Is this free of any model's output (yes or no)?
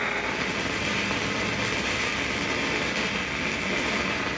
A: yes